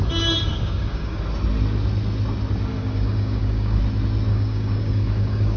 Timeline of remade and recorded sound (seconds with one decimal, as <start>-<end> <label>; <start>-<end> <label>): 0.0-0.5 recorded; 0.5-1.2 remade; 1.2-2.7 recorded; 2.7-3.8 remade; 3.8-4.3 recorded; 4.3-5.6 remade